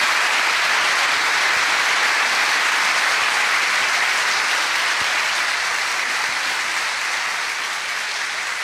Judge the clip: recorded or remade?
recorded